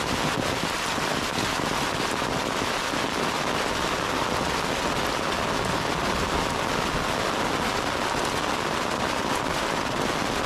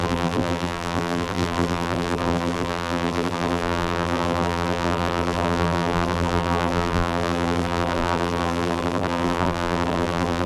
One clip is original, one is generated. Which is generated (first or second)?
second